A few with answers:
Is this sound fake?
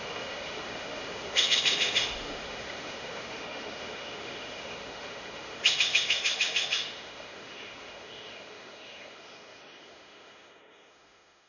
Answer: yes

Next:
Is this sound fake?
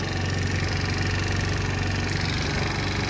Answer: no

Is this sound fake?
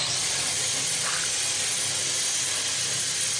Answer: no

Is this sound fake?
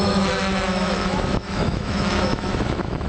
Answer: yes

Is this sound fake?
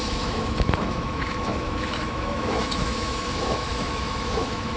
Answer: yes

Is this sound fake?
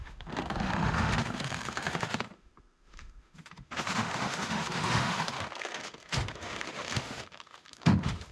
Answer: yes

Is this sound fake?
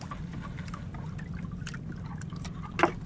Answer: no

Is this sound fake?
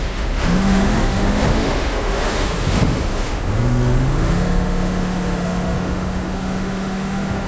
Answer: yes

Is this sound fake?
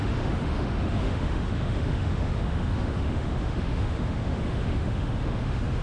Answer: yes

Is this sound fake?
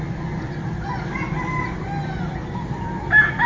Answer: no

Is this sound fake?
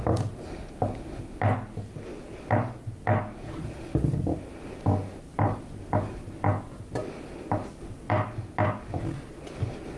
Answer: no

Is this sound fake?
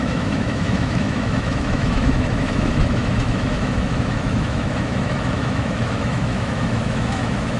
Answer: yes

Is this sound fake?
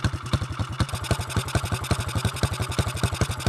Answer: no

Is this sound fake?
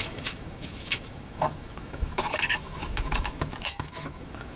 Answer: yes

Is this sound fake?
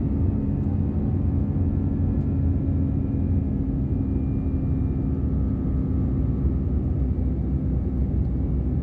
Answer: no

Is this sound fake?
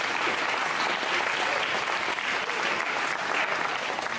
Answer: no